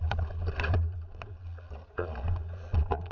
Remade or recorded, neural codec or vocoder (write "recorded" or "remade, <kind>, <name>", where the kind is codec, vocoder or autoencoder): remade, vocoder, Vocos